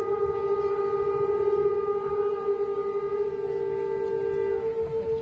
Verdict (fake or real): real